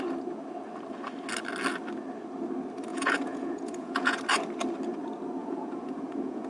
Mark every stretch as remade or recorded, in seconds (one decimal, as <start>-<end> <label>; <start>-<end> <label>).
0.0-2.9 recorded; 2.9-4.2 remade; 4.2-5.4 recorded; 5.4-6.5 remade